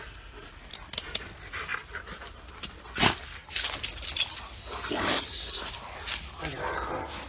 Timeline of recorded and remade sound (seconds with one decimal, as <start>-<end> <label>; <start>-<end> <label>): 0.0-7.3 recorded